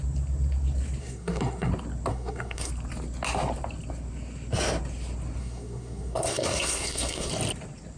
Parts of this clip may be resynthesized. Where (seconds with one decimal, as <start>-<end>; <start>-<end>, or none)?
1.0-1.7; 2.1-2.7; 5.4-7.3